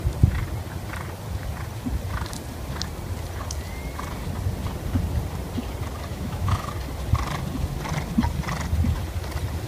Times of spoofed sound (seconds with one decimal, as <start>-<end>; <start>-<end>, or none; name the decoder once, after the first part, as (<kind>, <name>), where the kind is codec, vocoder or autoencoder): 6.1-6.7 (autoencoder, DAC-VAE)

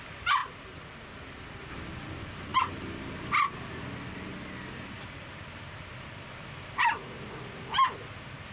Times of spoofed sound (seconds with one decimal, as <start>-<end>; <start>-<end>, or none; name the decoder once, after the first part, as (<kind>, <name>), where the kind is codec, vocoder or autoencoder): none

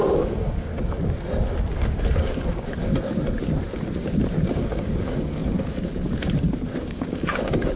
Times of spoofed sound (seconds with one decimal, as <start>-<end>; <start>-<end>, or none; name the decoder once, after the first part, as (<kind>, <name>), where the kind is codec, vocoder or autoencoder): 0.0-0.7 (codec, DAC); 1.7-2.9; 4.5-5.4; 6.8-7.8

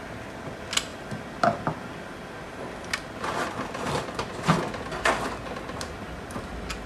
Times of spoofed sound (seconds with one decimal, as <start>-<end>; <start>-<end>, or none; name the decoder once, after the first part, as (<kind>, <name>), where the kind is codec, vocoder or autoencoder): none

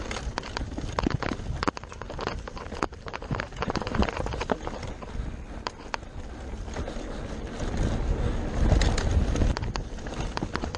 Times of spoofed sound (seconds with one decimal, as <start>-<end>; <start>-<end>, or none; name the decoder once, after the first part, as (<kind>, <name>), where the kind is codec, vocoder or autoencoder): 3.2-4.7 (vocoder, BigVGAN v2)

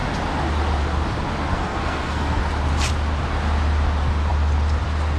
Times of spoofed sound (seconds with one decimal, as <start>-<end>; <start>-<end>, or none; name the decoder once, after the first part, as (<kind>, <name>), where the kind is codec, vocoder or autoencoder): 1.5-2.4 (codec, SNAC)